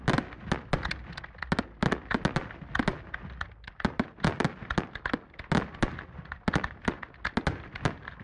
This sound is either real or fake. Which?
real